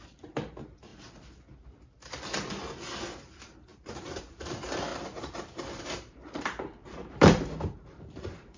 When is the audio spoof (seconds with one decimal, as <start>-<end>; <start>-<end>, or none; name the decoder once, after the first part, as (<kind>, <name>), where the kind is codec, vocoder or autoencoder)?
0.0-0.9 (vocoder, BigVGAN v2); 3.0-8.6